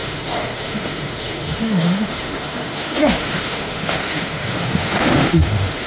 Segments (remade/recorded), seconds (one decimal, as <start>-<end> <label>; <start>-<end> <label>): 0.0-5.9 remade

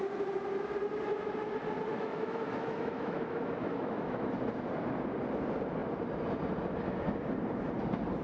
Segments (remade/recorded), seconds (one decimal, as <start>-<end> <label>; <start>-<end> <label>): 0.0-1.9 recorded; 1.9-4.3 remade; 4.3-8.2 recorded

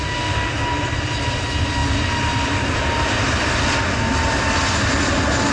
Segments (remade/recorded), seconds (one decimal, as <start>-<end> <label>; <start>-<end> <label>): 0.0-5.5 recorded